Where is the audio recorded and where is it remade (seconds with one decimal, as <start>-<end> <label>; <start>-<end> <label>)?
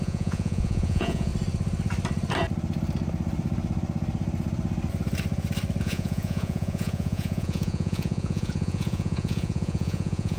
0.0-1.3 remade; 1.3-5.8 recorded; 5.8-10.4 remade